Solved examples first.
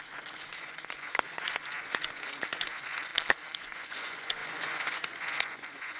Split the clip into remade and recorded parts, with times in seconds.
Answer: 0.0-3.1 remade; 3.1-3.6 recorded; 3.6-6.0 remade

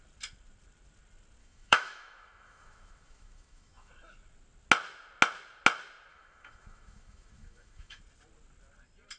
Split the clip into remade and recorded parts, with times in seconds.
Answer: 0.0-1.4 recorded; 1.4-3.9 remade; 3.9-6.1 recorded; 6.1-8.0 remade; 8.0-9.2 recorded